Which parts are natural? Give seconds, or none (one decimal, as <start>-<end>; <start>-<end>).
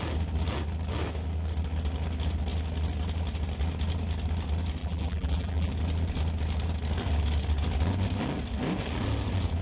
0.0-4.8; 5.7-9.6